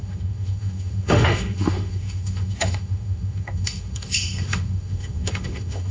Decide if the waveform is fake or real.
fake